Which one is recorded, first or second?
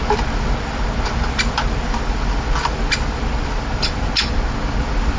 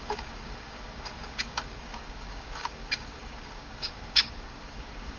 first